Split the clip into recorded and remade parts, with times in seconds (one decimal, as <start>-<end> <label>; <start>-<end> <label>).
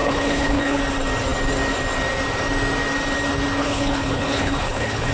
0.0-0.8 remade; 0.8-3.6 recorded; 3.6-5.1 remade